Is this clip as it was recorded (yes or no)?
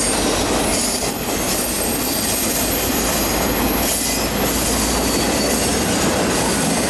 yes